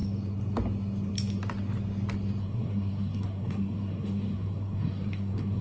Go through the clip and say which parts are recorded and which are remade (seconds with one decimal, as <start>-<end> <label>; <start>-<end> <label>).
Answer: 0.0-2.4 recorded; 2.4-5.6 remade